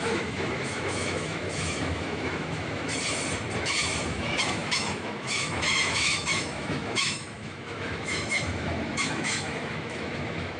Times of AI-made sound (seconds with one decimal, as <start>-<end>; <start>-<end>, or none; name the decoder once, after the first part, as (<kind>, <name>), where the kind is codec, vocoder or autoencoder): 0.0-2.9 (autoencoder, DAC-VAE); 3.6-10.6